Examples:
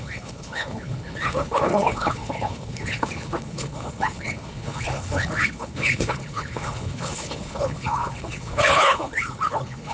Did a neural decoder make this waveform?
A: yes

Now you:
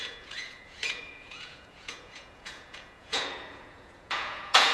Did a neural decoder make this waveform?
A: yes